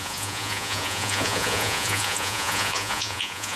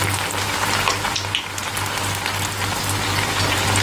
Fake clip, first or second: first